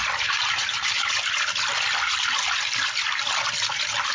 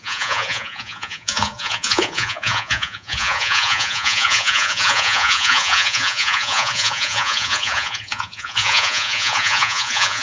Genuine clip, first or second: first